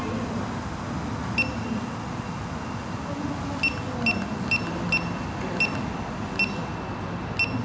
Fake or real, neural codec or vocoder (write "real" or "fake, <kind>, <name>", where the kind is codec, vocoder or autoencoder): real